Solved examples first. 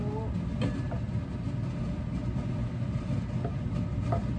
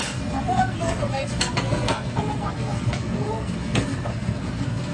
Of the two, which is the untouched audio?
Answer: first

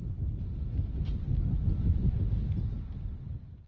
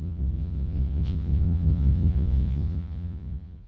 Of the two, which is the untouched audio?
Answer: first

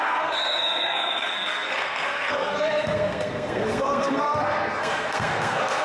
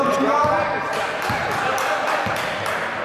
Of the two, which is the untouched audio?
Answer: second